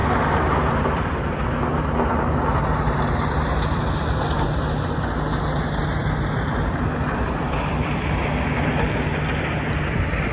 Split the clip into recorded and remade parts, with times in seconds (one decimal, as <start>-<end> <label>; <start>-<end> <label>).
0.0-1.0 remade; 1.0-6.0 recorded; 6.0-7.7 remade; 7.7-10.3 recorded